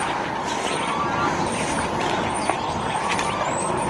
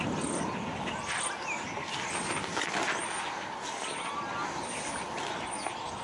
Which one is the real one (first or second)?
second